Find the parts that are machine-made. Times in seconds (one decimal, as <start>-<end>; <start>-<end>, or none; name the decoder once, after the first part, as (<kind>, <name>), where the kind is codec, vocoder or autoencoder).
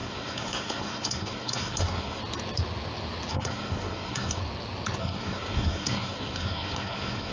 0.0-2.2 (codec, SNAC); 3.3-4.4; 5.0-7.3